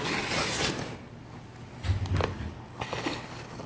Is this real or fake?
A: real